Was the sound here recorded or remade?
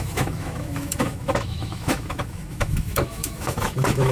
remade